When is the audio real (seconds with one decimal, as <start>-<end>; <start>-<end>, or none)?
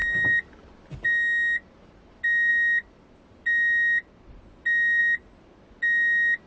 0.0-6.5